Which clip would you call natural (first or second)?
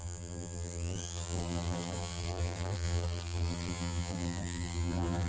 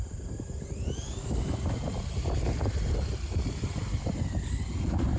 second